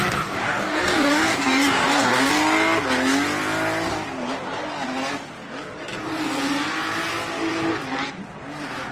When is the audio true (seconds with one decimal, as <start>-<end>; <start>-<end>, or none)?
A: 0.0-0.4; 2.3-8.9